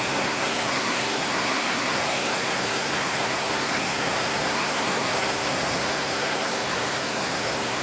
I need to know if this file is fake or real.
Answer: fake